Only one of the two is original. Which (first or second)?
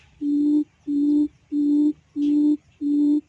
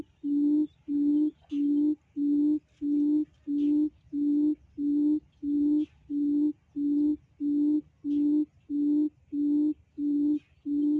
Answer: second